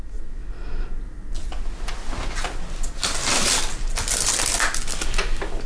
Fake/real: real